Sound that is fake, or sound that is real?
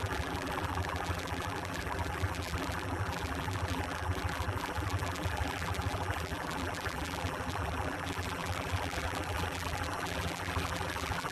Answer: fake